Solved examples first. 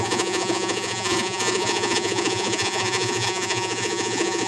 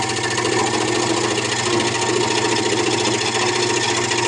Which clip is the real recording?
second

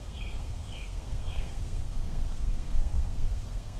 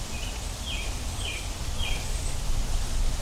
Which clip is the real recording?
second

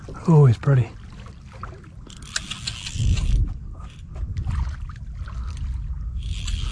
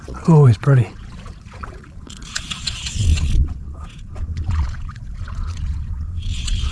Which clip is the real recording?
first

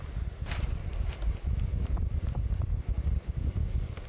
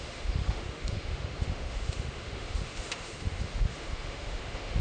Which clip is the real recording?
first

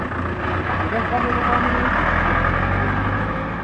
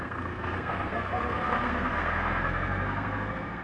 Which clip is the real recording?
first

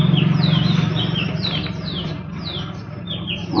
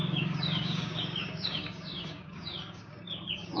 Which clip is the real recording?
first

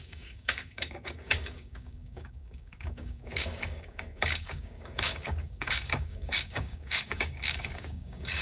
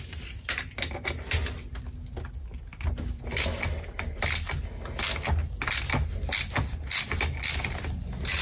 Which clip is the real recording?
second